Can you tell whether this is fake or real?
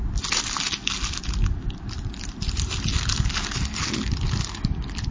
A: real